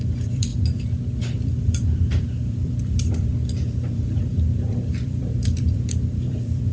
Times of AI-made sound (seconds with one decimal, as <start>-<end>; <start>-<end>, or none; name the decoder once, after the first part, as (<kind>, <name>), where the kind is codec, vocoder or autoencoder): 0.0-0.5 (vocoder, BigVGAN v2); 1.2-6.7